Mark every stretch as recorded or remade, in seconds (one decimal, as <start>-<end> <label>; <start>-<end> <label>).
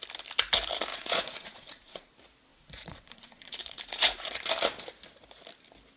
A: 0.0-0.9 recorded; 0.9-2.1 remade; 2.1-2.5 recorded; 2.5-4.4 remade; 4.4-6.0 recorded